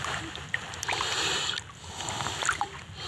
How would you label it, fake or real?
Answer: real